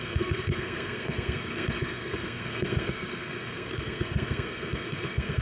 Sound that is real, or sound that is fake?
fake